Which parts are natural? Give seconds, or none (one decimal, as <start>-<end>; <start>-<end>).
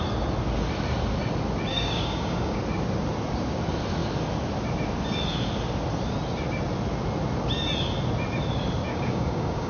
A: 0.0-1.7; 2.6-8.9